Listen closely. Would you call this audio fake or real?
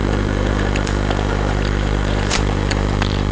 fake